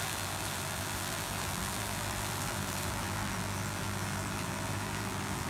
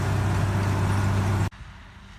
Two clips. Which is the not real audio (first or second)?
first